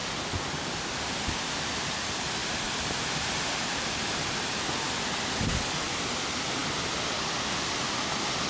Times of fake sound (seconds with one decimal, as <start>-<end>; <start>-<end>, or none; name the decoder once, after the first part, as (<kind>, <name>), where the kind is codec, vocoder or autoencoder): 2.4-4.7 (vocoder, BigVGAN v2)